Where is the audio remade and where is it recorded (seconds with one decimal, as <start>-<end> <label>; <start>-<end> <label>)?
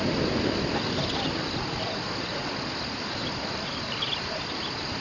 0.0-5.0 recorded